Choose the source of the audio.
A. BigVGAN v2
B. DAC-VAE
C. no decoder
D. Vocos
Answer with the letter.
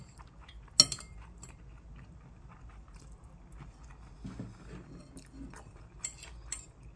C